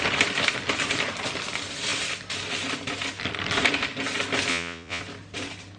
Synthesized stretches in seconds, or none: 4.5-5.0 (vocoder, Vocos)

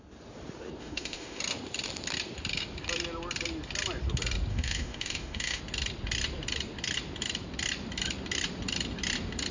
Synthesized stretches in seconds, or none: 0.8-1.4 (autoencoder, DAC-VAE); 4.5-5.6